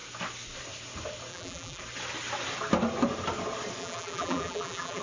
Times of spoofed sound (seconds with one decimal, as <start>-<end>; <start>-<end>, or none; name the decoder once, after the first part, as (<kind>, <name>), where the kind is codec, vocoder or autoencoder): 1.3-1.8 (vocoder, BigVGAN v2); 3.8-5.0